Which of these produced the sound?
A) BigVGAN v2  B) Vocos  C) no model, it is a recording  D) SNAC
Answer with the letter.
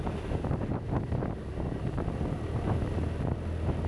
C